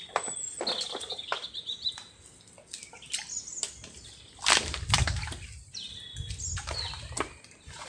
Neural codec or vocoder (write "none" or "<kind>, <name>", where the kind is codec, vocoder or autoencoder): none